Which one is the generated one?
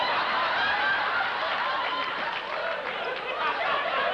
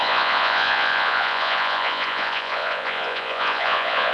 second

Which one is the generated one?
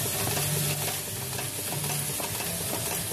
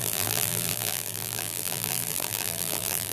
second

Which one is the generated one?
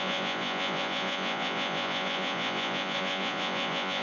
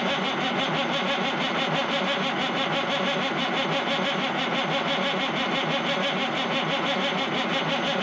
first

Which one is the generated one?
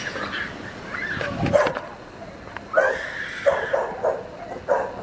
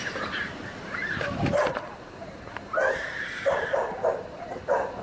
second